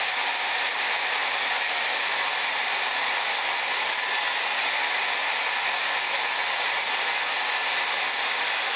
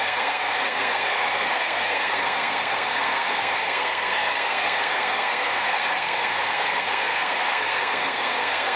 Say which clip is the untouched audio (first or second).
first